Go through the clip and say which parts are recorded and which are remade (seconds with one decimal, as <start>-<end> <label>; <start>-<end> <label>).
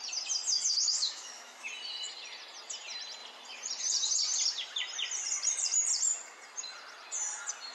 0.0-0.6 recorded; 0.6-1.7 remade; 1.7-7.7 recorded